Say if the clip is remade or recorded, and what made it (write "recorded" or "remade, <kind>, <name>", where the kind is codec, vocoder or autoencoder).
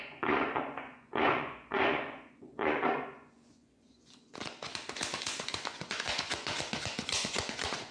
remade, vocoder, Vocos